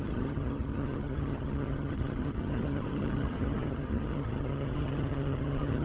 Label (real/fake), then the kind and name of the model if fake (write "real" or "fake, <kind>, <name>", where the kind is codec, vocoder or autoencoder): fake, vocoder, HiFi-GAN